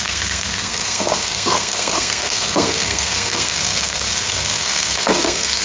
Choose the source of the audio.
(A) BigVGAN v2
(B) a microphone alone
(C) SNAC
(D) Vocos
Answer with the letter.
C